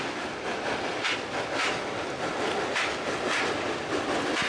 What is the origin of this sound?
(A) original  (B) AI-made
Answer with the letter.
A